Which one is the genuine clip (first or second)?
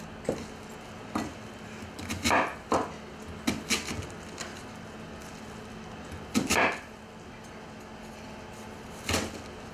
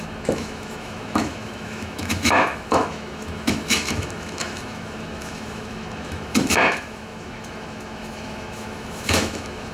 first